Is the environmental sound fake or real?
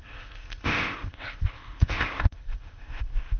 fake